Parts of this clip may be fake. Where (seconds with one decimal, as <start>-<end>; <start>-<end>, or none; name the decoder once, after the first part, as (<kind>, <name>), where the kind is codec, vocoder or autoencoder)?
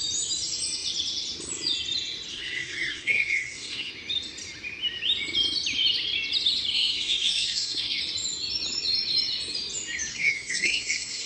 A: 2.3-3.9 (codec, SNAC); 6.7-8.0; 10.1-11.3